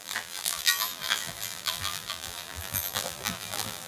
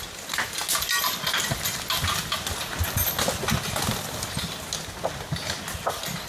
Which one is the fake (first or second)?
first